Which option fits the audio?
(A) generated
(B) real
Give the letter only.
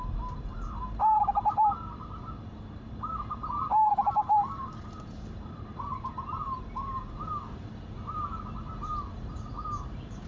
A